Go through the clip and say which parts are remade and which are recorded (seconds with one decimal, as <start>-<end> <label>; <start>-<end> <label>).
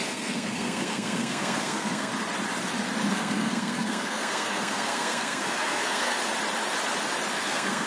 0.0-2.1 remade; 2.1-3.1 recorded; 3.1-6.2 remade; 6.2-7.3 recorded; 7.3-7.9 remade